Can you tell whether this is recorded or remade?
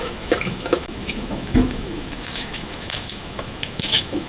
remade